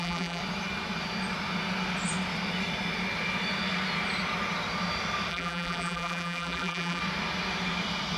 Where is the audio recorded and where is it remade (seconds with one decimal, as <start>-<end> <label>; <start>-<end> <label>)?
0.0-0.4 remade; 0.4-5.3 recorded; 5.3-7.0 remade; 7.0-8.2 recorded